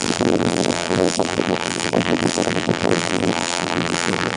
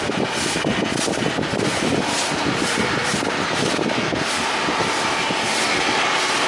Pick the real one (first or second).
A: second